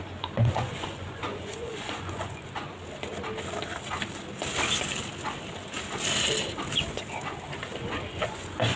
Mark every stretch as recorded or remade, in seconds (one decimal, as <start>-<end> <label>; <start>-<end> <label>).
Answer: 0.0-2.7 remade; 2.7-7.8 recorded; 7.8-8.8 remade